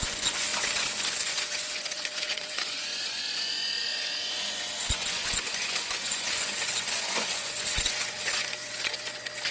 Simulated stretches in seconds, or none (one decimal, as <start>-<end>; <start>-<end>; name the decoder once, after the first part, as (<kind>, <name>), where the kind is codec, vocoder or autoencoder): 0.0-9.5 (vocoder, Vocos)